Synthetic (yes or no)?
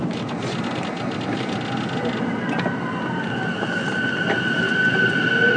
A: no